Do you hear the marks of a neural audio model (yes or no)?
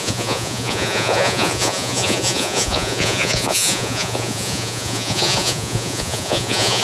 yes